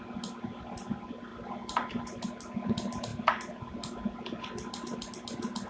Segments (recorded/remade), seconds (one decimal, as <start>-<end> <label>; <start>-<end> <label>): 0.0-5.7 recorded